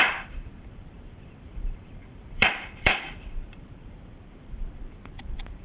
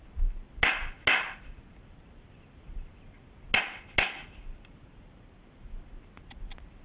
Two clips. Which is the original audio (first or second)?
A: second